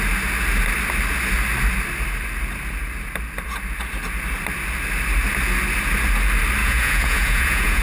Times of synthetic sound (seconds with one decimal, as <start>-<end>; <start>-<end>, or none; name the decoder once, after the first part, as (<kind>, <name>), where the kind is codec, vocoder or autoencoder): 6.6-7.8 (vocoder, Vocos)